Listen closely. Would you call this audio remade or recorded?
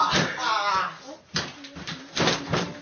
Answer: recorded